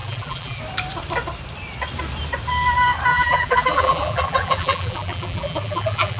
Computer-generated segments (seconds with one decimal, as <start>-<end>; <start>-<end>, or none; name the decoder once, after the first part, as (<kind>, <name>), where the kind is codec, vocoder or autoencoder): 0.0-0.6 (vocoder, BigVGAN v2); 3.1-6.2

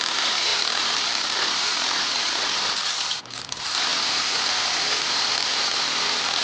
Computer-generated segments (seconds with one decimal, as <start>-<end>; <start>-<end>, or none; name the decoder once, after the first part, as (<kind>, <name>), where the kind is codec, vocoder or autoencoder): 0.5-3.2 (vocoder, BigVGAN v2)

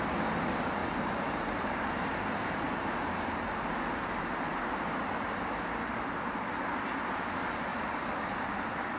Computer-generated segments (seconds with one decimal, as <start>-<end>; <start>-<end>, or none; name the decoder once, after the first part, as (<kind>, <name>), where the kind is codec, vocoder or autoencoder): 0.8-3.4 (vocoder, BigVGAN v2); 4.5-5.0; 7.7-9.0

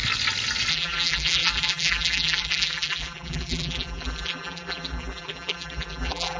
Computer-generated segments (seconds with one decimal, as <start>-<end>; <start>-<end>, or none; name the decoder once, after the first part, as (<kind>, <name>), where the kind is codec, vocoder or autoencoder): 0.7-6.4 (vocoder, BigVGAN v2)

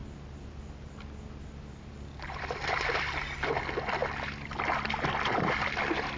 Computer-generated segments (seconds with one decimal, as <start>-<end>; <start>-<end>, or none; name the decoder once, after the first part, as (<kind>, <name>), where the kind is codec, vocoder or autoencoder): none

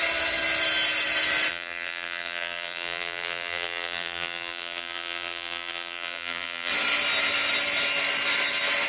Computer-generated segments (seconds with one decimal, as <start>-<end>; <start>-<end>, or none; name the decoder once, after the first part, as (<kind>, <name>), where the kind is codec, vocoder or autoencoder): 1.5-6.7 (vocoder, BigVGAN v2)

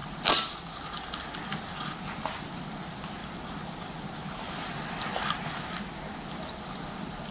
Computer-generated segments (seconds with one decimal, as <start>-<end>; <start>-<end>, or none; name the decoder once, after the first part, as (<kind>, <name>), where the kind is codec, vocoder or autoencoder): none